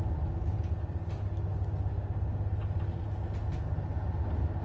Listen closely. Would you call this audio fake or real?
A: real